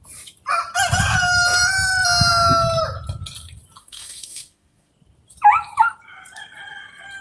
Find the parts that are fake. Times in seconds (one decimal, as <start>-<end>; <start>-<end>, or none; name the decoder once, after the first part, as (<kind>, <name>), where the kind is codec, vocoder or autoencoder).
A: 3.8-4.9 (autoencoder, DAC-VAE)

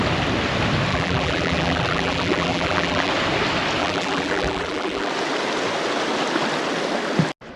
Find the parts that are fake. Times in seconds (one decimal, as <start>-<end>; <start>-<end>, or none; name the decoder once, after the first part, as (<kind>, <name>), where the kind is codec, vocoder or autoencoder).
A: 0.9-3.1 (vocoder, BigVGAN v2); 3.8-5.1

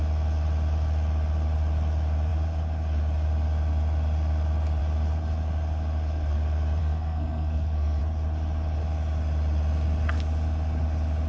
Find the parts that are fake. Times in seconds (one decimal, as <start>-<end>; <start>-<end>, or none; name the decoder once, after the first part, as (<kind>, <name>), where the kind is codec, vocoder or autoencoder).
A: 6.8-8.0 (codec, SNAC)

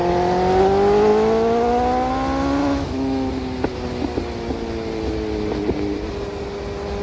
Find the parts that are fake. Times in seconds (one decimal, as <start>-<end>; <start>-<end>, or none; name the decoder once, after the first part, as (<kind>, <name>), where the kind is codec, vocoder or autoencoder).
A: 2.6-3.3 (autoencoder, DAC-VAE)

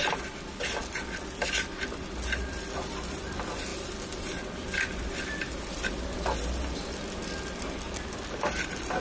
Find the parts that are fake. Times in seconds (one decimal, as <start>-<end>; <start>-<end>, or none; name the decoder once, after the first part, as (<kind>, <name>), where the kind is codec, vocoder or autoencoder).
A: none

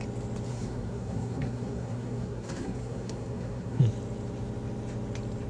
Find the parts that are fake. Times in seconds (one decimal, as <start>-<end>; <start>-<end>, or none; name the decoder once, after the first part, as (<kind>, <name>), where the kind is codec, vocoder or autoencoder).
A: 0.5-3.8 (codec, SNAC)